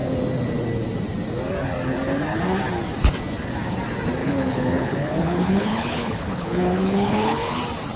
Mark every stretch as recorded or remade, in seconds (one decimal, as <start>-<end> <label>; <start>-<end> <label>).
0.0-4.2 recorded; 4.2-7.6 remade; 7.6-8.0 recorded